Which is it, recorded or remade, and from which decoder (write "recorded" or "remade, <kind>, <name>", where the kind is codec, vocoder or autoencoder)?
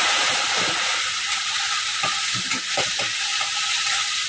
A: recorded